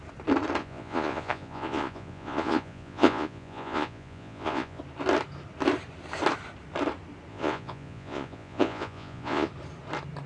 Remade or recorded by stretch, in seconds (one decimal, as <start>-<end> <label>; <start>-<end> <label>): 0.0-0.6 recorded; 0.6-4.8 remade; 4.8-7.3 recorded; 7.3-9.5 remade; 9.5-10.3 recorded